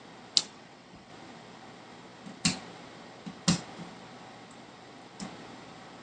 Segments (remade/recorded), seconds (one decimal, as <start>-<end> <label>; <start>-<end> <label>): 0.0-0.4 recorded; 0.4-1.1 remade; 1.1-6.0 recorded